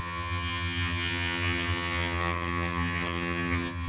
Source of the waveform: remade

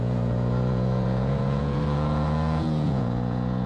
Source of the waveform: remade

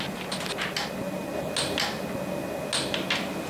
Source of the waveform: recorded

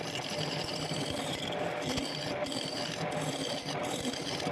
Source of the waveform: remade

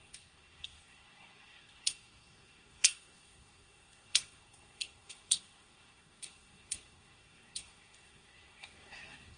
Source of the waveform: remade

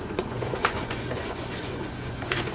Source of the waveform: remade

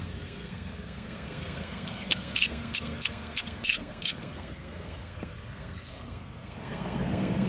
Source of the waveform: remade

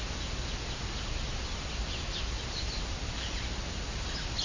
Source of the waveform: recorded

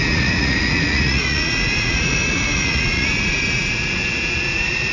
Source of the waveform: remade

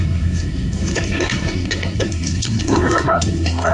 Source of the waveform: remade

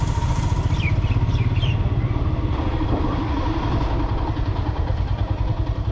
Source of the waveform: recorded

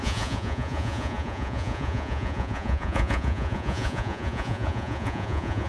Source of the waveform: remade